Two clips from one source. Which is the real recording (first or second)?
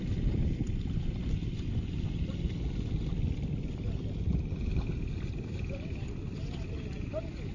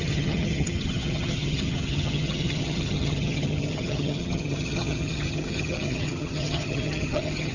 first